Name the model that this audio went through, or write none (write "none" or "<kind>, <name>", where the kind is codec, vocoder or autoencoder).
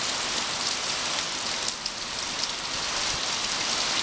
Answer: none